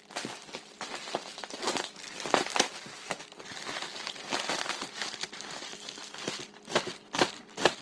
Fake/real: real